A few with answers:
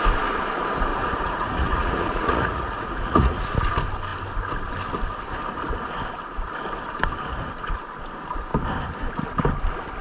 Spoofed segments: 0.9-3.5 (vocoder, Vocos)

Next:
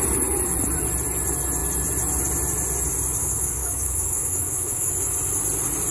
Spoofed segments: 3.2-4.9 (codec, DAC)